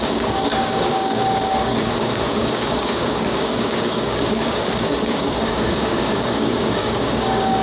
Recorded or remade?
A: remade